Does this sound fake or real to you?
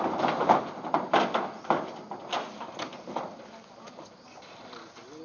real